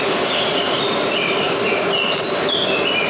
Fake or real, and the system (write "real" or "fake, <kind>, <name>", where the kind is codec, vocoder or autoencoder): real